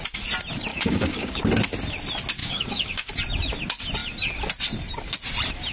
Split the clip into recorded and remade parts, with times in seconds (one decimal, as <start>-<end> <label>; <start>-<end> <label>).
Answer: 0.0-0.7 recorded; 0.7-1.4 remade; 1.4-2.4 recorded; 2.4-3.1 remade; 3.1-5.7 recorded